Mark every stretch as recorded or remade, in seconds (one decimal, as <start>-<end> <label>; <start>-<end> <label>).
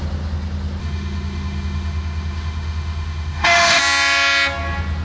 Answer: 0.0-0.8 recorded; 0.8-3.8 remade; 3.8-5.0 recorded